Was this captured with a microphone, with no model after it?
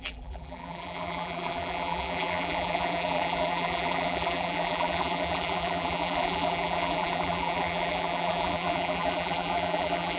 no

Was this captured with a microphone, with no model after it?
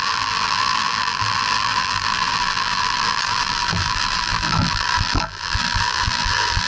no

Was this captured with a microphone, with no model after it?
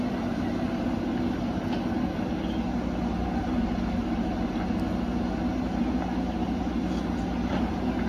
yes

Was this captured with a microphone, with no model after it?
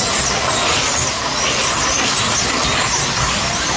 yes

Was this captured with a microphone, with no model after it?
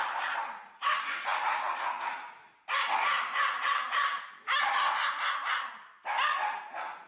yes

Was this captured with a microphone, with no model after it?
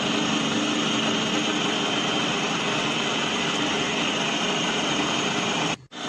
yes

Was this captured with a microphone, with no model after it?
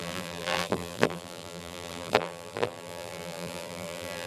no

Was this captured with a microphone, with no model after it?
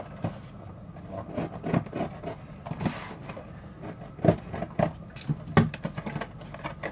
yes